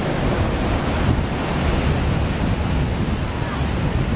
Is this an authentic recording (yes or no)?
yes